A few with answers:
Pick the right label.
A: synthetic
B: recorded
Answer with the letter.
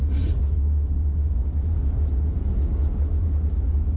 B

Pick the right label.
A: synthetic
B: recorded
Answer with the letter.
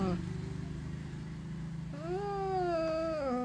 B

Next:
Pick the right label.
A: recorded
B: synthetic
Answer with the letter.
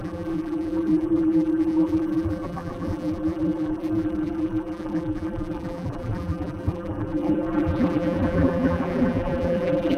B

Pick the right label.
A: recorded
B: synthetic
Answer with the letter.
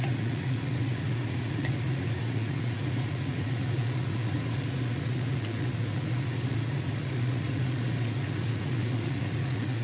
B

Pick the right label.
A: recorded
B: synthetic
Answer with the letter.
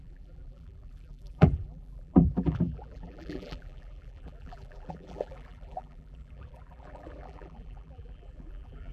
B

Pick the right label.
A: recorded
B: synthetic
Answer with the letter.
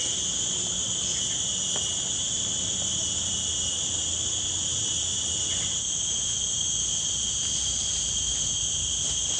A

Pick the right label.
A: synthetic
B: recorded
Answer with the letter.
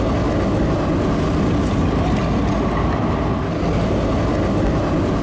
B